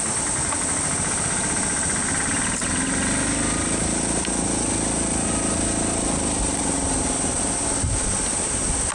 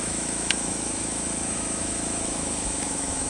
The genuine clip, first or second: first